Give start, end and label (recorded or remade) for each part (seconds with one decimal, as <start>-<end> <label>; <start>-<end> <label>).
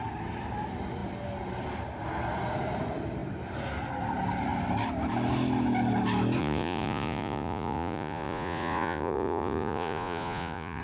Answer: 0.0-6.4 recorded; 6.4-10.8 remade